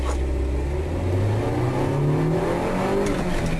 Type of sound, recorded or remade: recorded